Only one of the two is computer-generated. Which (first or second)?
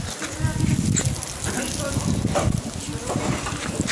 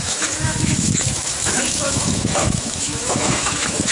second